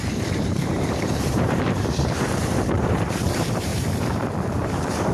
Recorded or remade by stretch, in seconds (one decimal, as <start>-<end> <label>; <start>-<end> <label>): 0.0-3.7 remade; 3.7-4.6 recorded; 4.6-5.1 remade